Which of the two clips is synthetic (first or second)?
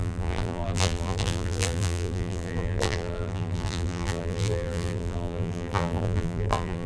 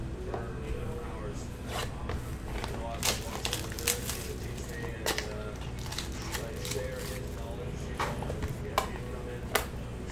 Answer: first